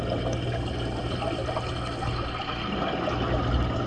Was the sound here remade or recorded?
recorded